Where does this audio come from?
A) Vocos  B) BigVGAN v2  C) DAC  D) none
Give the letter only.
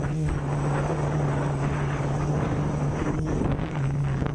C